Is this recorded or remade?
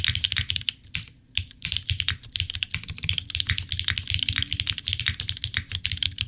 recorded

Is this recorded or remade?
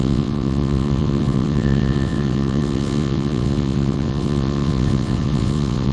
remade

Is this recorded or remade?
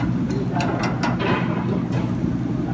recorded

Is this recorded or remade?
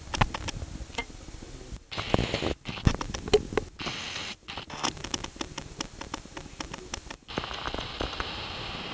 recorded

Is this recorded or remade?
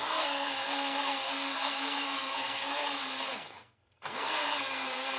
remade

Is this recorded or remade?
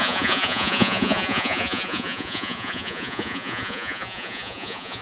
remade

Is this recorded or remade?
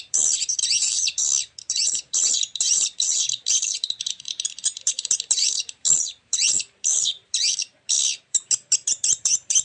remade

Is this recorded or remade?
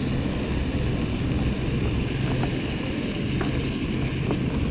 recorded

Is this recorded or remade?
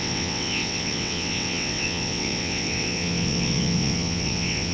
remade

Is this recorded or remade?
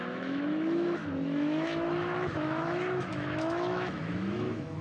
remade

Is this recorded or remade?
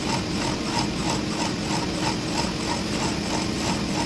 recorded